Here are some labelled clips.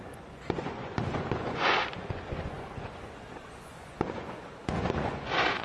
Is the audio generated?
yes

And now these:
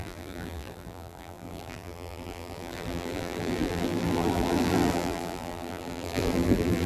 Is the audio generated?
yes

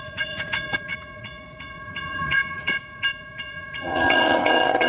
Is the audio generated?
yes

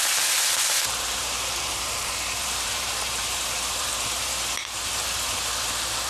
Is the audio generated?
yes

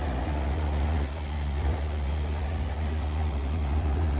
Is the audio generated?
yes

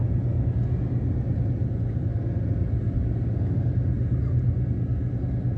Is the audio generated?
no